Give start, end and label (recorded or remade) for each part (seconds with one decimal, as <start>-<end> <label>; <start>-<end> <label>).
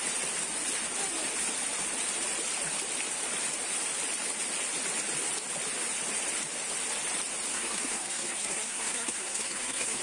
0.0-7.5 recorded; 7.5-10.0 remade